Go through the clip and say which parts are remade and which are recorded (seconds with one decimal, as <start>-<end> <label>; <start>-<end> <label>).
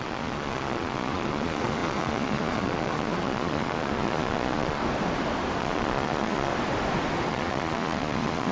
0.0-4.8 remade; 4.8-5.6 recorded; 5.6-6.5 remade; 6.5-7.3 recorded; 7.3-8.5 remade